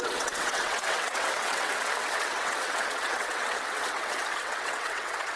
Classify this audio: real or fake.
fake